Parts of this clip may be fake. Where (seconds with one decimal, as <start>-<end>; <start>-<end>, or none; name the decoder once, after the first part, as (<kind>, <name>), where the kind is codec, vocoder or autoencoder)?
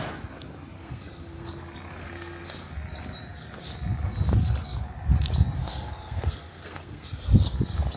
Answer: 0.8-1.5 (codec, SNAC); 2.0-2.7; 5.6-7.4